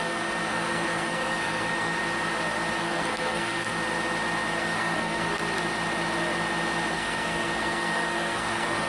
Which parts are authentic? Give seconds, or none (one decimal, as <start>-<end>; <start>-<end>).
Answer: 2.0-2.7; 3.7-4.6; 5.4-6.9